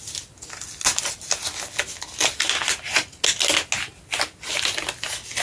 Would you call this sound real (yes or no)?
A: yes